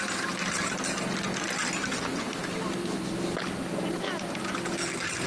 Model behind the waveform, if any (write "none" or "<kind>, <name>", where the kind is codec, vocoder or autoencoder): none